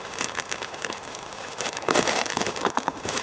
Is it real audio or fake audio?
fake